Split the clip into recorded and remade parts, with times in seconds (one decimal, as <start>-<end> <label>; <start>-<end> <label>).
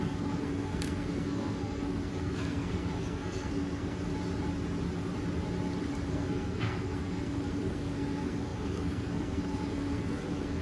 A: 0.0-4.1 remade; 4.1-6.1 recorded; 6.1-10.6 remade